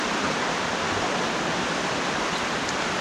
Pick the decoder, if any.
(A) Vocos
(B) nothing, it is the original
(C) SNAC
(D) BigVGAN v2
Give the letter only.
B